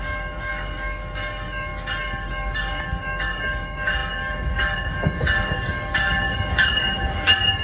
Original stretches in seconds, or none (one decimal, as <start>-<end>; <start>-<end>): none